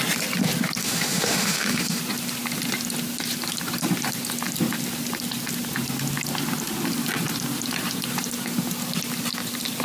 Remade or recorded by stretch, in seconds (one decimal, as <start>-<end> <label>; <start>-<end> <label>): 0.0-0.8 recorded; 0.8-2.0 remade; 2.0-9.8 recorded